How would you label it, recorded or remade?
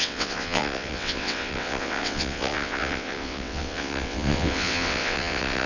remade